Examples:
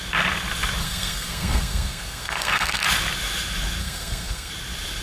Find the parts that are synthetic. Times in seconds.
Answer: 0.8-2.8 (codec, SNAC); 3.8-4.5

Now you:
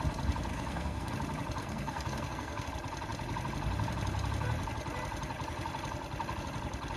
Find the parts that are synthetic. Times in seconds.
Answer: 0.5-1.1 (codec, SNAC); 1.6-2.7

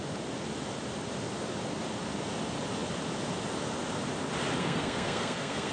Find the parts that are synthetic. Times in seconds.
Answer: 4.6-5.7 (codec, SNAC)

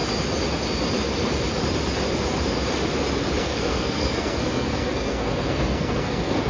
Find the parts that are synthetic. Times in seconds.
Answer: 3.4-6.5 (codec, SNAC)

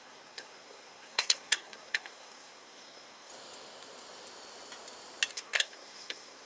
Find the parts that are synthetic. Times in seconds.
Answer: 0.0-3.3 (codec, SNAC); 5.3-6.5

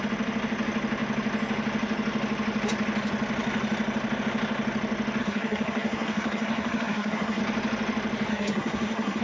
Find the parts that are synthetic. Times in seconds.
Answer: 5.2-7.4 (codec, SNAC); 8.3-9.2

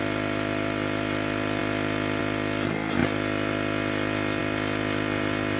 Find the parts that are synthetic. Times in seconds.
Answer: none

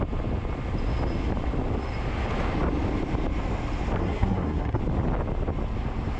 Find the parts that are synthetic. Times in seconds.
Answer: 4.0-4.8 (codec, SNAC)